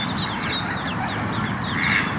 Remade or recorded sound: recorded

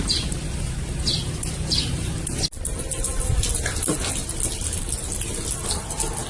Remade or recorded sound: recorded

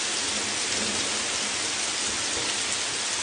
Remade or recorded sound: recorded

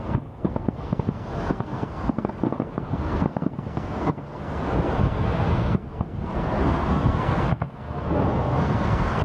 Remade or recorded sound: remade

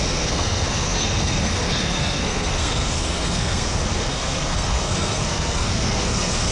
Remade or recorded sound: remade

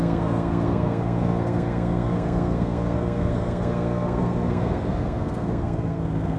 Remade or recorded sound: remade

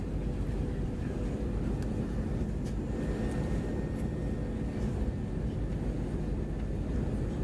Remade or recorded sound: recorded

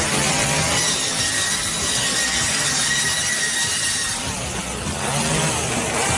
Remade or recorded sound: recorded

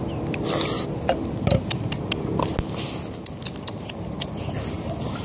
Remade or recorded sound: recorded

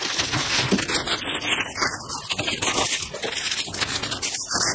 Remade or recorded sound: recorded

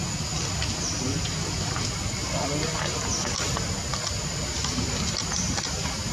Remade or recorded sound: recorded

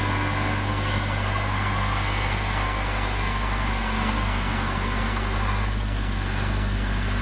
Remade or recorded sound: remade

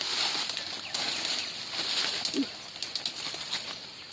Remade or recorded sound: recorded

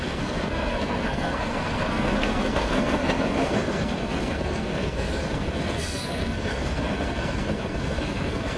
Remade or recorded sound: remade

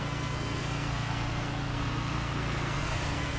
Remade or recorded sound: remade